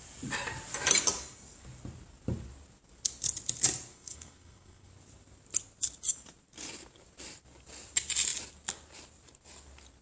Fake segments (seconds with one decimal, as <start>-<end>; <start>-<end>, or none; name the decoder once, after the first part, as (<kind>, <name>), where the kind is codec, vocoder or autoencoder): 3.9-4.9 (codec, SNAC)

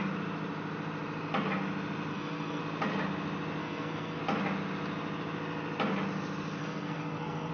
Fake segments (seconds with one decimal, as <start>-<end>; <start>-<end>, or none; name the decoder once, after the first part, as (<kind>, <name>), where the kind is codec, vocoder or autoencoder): 2.1-2.6 (codec, SNAC); 3.6-4.2; 6.6-7.5

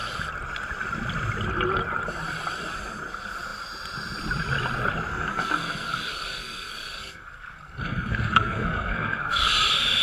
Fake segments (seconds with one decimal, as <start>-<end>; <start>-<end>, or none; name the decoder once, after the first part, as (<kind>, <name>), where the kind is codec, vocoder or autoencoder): 5.1-9.5 (codec, SNAC)

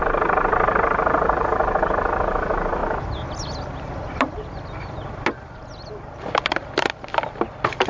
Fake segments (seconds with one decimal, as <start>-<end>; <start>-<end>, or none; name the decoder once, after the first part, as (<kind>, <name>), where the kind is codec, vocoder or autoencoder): none

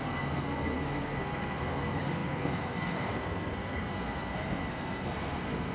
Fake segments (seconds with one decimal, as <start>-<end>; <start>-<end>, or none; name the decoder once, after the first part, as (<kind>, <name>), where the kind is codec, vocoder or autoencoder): 0.0-5.7 (codec, SNAC)

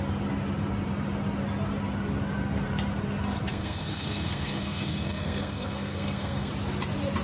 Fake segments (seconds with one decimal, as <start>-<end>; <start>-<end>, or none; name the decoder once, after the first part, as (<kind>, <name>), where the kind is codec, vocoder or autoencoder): 3.5-6.5 (codec, SNAC)